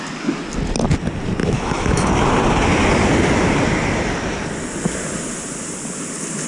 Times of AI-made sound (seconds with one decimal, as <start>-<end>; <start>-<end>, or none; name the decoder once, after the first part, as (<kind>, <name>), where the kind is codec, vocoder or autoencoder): 1.4-2.1 (autoencoder, DAC-VAE)